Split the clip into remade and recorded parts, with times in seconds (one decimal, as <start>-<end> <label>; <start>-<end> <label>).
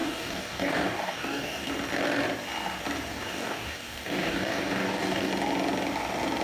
0.0-1.7 remade; 1.7-3.1 recorded; 3.1-5.3 remade; 5.3-6.4 recorded